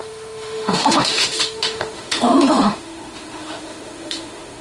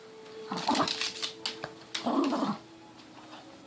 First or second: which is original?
second